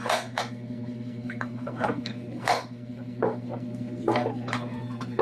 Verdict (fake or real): fake